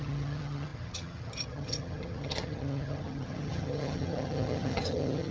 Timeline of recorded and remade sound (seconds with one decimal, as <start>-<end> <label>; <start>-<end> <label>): 0.0-5.3 remade